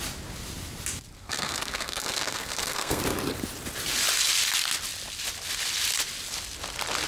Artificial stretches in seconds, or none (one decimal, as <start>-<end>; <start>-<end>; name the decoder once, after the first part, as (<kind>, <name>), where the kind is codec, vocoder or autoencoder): 1.2-3.0 (codec, SNAC)